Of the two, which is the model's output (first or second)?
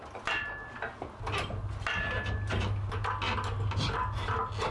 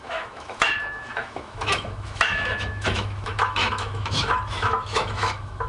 second